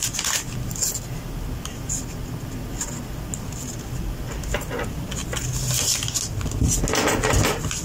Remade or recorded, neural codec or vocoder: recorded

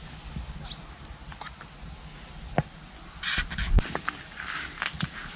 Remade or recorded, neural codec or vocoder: recorded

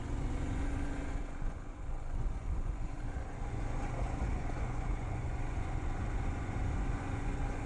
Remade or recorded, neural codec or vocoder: remade, vocoder, Vocos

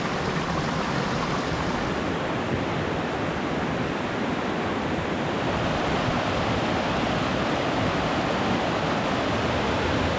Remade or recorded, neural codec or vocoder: recorded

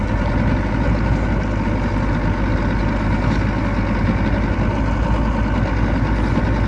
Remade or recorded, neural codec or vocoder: recorded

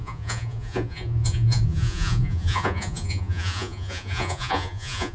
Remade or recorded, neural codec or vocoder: remade, vocoder, Vocos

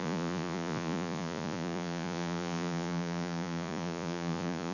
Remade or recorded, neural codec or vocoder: remade, vocoder, Vocos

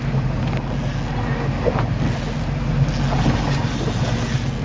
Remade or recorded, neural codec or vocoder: recorded